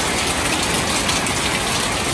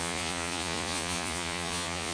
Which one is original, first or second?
first